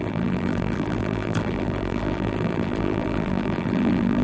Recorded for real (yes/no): no